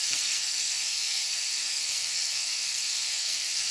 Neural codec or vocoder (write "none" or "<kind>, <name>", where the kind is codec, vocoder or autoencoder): codec, SNAC